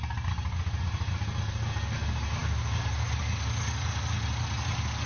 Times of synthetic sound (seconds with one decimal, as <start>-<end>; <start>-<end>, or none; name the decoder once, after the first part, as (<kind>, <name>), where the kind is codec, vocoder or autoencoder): none